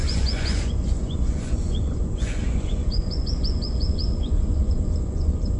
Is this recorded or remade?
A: remade